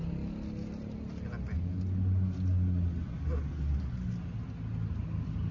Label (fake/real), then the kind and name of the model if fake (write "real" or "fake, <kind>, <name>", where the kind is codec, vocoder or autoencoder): real